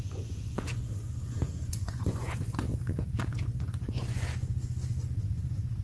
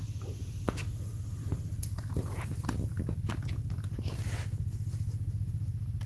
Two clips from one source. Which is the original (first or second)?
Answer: second